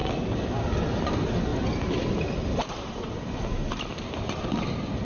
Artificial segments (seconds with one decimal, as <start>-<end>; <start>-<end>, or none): none